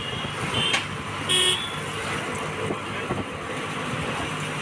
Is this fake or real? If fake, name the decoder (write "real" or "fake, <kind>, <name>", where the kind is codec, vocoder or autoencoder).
real